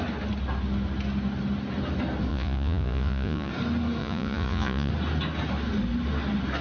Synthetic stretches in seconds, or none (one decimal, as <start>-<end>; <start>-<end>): 2.3-3.5; 4.0-4.9